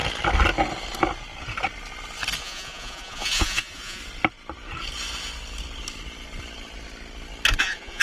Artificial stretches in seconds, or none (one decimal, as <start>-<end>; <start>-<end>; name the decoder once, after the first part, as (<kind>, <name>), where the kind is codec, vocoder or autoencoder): 2.4-4.0 (vocoder, Vocos); 7.6-8.0